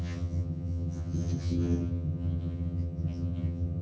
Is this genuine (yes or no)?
no